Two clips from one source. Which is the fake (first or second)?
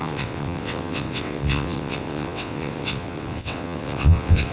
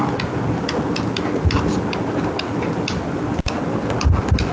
first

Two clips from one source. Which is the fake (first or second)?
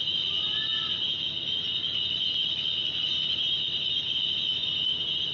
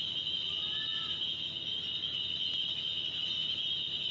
first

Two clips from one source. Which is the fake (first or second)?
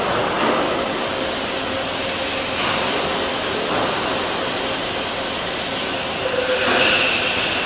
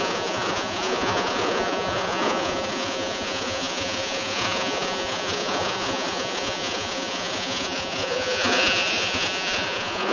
second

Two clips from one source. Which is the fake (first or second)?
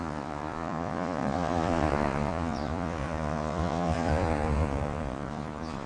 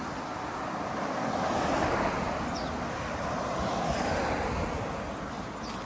first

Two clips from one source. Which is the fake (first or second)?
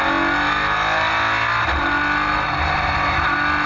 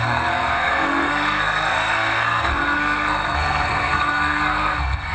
second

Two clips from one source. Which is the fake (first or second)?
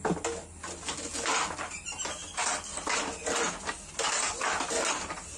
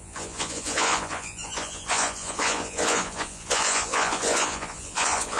second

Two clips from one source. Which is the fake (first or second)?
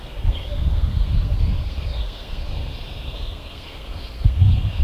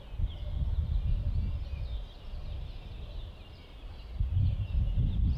first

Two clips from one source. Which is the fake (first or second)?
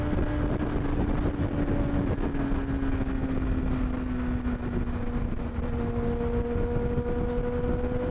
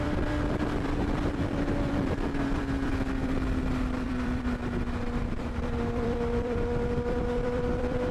second